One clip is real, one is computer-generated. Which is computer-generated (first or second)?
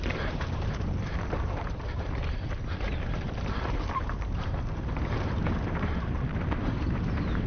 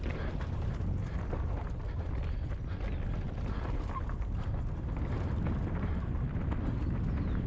first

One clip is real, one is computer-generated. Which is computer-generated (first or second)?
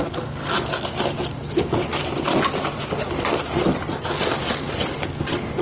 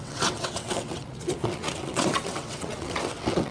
second